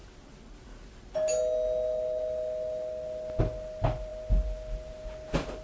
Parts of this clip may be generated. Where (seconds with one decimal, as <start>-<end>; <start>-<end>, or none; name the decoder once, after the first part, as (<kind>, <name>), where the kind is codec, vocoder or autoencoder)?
none